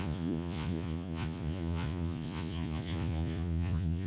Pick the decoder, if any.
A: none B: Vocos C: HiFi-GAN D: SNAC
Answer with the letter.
B